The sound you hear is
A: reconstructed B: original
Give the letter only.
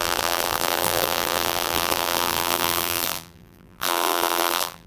A